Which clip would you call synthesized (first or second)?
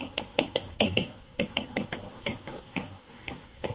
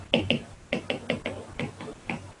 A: first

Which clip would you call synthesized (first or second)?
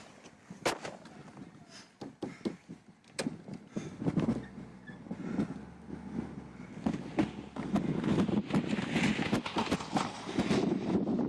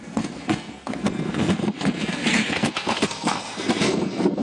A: second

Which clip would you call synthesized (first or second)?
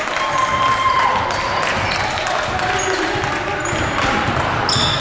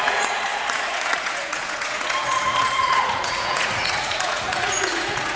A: second